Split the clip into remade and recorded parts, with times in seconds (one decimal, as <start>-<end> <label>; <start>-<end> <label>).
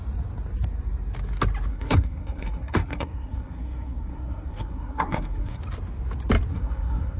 0.0-1.7 recorded; 1.7-5.6 remade; 5.6-6.5 recorded; 6.5-7.2 remade